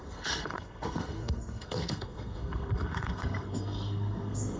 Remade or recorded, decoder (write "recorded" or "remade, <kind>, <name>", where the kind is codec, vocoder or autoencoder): remade, codec, SNAC